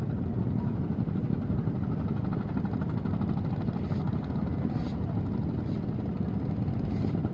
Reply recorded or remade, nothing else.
recorded